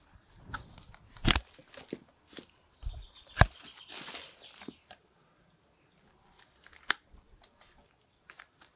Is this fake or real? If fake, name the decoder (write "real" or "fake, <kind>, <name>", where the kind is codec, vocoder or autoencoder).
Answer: real